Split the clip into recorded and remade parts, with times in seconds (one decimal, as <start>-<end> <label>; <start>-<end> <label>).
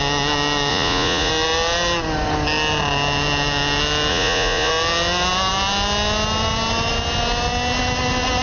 0.0-0.7 recorded; 0.7-1.3 remade; 1.3-4.1 recorded; 4.1-4.7 remade; 4.7-8.4 recorded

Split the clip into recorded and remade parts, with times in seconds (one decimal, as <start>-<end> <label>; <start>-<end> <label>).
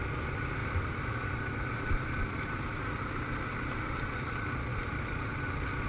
0.0-0.6 recorded; 0.6-1.3 remade; 1.3-4.7 recorded; 4.7-5.4 remade; 5.4-5.9 recorded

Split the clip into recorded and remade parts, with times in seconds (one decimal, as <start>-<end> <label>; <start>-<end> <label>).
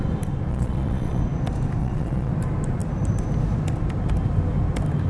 0.0-0.5 recorded; 0.5-1.2 remade; 1.2-1.8 recorded; 1.8-2.3 remade; 2.3-5.1 recorded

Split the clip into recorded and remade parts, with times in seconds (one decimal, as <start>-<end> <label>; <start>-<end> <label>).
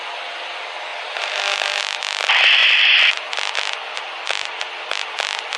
0.0-0.9 recorded; 0.9-1.8 remade; 1.8-2.6 recorded; 2.6-5.1 remade; 5.1-5.6 recorded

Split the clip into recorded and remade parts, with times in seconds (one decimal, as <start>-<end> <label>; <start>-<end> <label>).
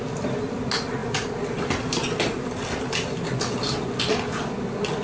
0.0-5.0 recorded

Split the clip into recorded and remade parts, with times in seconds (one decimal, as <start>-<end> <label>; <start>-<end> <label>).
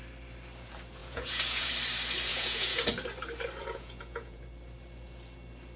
0.0-1.0 recorded; 1.0-1.7 remade; 1.7-2.3 recorded; 2.3-2.8 remade; 2.8-3.6 recorded; 3.6-4.4 remade; 4.4-5.8 recorded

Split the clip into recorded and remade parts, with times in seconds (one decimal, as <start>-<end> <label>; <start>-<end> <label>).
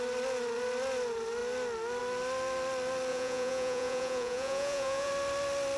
0.0-3.1 recorded; 3.1-5.1 remade; 5.1-5.8 recorded